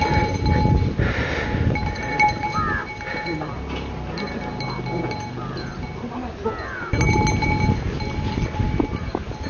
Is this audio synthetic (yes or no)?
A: no